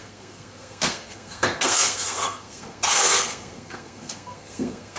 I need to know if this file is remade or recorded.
remade